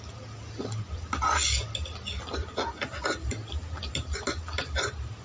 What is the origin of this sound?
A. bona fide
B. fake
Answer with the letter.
A